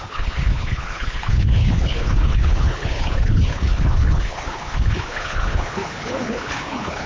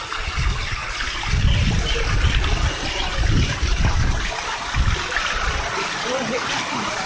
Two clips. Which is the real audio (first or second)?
second